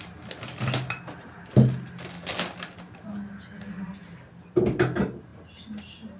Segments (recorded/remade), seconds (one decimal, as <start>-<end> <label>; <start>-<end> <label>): 0.0-6.2 recorded